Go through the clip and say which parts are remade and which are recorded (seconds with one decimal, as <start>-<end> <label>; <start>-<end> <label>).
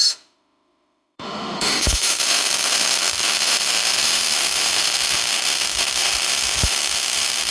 0.0-7.5 remade